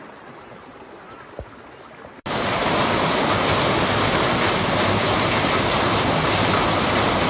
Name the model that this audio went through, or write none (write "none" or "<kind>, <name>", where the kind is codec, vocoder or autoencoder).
none